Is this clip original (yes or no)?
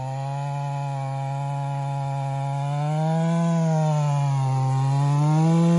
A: yes